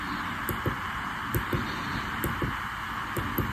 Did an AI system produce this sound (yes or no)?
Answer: no